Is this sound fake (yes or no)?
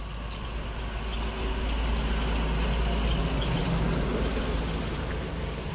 no